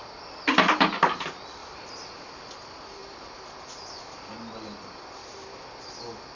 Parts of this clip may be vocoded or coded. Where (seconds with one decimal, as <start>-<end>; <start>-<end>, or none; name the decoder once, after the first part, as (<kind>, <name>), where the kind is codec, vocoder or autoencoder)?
1.6-2.5 (vocoder, BigVGAN v2); 5.2-5.7

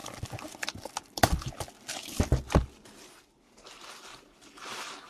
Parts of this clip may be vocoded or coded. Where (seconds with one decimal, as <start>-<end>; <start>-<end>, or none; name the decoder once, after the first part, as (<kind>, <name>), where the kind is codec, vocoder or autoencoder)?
0.0-1.5 (vocoder, BigVGAN v2)

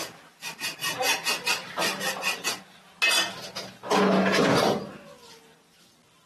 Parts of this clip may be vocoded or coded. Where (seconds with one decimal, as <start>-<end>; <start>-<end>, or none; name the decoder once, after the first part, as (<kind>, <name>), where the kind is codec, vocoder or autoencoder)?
0.7-2.1 (vocoder, BigVGAN v2)